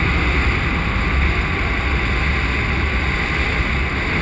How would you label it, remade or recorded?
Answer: recorded